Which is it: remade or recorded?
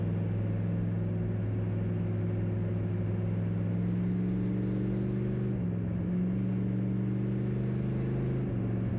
recorded